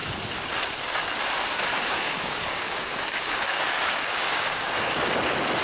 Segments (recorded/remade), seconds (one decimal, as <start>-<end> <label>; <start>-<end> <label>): 0.0-1.7 recorded; 1.7-5.1 remade; 5.1-5.6 recorded